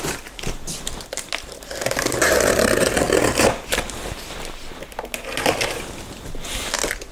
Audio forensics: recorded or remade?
recorded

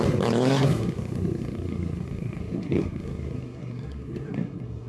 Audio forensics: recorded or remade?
remade